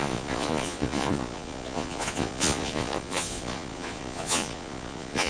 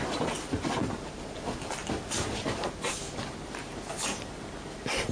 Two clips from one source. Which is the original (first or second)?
second